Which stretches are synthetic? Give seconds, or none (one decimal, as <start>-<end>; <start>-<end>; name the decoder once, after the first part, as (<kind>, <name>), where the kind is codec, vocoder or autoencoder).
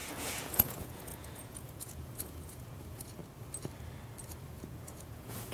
0.0-3.2 (vocoder, Vocos); 4.5-5.5